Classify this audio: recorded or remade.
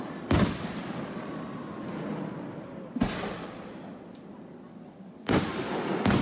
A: recorded